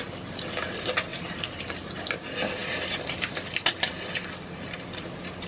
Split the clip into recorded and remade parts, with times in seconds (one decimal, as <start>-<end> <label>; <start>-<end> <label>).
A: 0.0-5.5 recorded